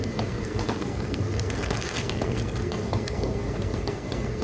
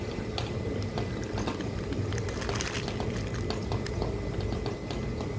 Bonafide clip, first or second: second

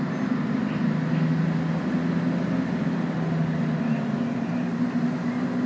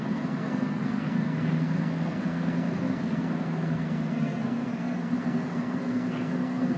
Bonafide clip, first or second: first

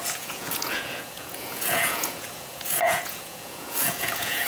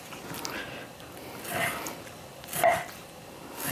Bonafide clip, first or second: second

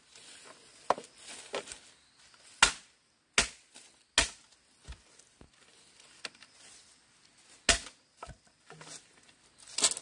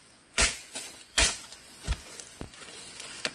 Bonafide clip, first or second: first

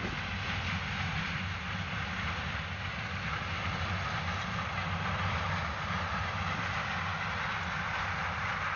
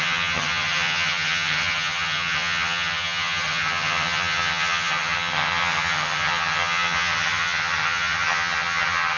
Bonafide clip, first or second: first